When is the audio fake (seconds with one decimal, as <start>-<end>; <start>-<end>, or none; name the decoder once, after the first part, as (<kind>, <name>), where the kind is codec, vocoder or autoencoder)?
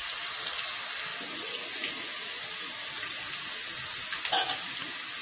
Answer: none